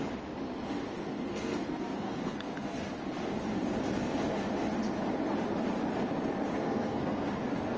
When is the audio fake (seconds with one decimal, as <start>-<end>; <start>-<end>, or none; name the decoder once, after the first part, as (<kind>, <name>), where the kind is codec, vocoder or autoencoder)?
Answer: 1.0-2.9 (codec, SNAC); 6.5-7.3